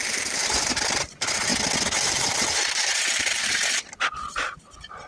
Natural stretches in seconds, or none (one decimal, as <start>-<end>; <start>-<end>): 1.5-2.0